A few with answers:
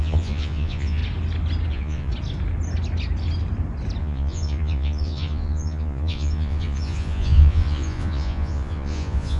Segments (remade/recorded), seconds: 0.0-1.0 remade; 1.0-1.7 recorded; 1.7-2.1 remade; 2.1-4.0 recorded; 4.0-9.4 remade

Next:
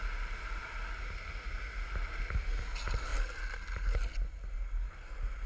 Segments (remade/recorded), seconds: 0.0-5.5 recorded

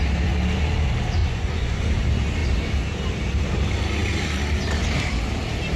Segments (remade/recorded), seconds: 0.0-1.2 recorded; 1.2-1.9 remade; 1.9-5.8 recorded

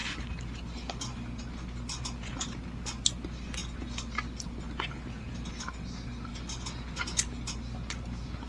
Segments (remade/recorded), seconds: 0.0-8.5 recorded

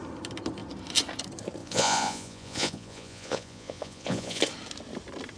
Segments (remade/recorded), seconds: 0.0-1.6 recorded; 1.6-4.4 remade; 4.4-5.4 recorded